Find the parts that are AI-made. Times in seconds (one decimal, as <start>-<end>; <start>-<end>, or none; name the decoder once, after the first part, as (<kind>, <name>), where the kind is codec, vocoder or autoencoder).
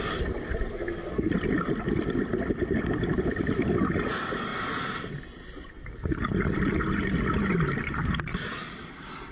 0.7-1.3 (codec, SNAC)